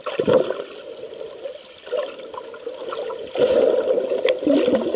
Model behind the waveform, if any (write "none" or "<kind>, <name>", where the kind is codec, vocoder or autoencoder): none